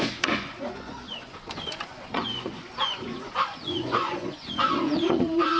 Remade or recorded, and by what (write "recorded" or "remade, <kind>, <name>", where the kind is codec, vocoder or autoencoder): remade, vocoder, Vocos